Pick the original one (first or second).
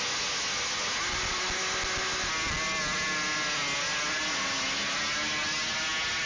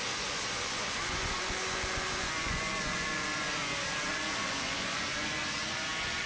first